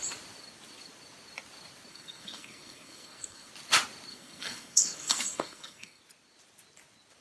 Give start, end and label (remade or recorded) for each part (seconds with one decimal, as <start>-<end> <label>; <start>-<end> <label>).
0.0-1.9 recorded; 1.9-3.5 remade; 3.5-4.1 recorded; 4.1-6.0 remade; 6.0-7.2 recorded